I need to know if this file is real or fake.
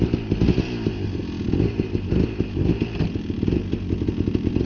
real